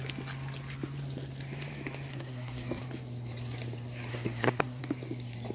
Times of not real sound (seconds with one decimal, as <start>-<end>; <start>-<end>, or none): 2.1-2.8; 4.1-4.8